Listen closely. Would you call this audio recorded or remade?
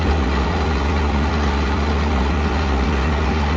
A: remade